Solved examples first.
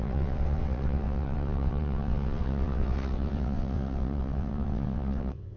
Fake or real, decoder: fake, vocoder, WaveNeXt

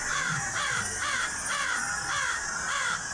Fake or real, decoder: fake, vocoder, BigVGAN v2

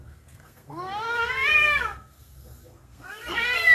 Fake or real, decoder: fake, codec, SNAC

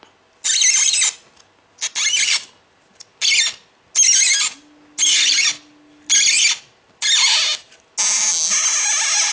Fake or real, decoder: real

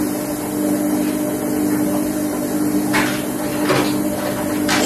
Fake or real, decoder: real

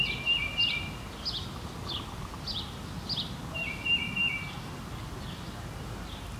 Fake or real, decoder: real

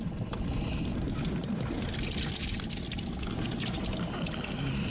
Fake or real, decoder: real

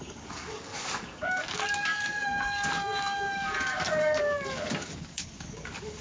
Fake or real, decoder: fake, codec, DAC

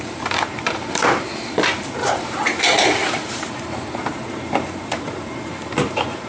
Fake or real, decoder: fake, vocoder, BigVGAN v2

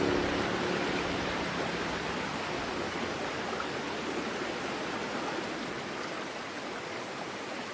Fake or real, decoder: real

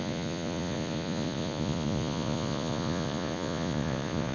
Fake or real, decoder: fake, vocoder, Vocos